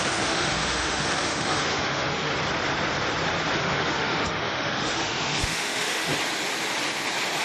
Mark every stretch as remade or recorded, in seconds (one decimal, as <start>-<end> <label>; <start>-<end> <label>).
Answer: 0.0-2.3 remade; 2.3-3.6 recorded; 3.6-6.1 remade; 6.1-7.4 recorded